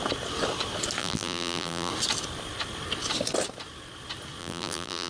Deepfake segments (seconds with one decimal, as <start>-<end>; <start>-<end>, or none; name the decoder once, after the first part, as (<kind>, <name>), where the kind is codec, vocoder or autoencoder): 1.0-1.9 (vocoder, BigVGAN v2); 4.4-5.1